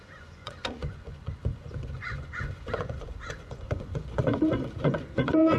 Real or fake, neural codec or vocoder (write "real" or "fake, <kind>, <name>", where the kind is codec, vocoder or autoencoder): fake, vocoder, Vocos